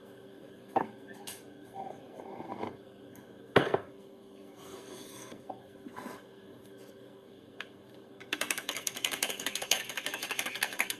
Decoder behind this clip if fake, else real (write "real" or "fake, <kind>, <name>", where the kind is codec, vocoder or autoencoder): fake, codec, SNAC